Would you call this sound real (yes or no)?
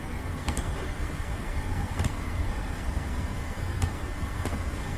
no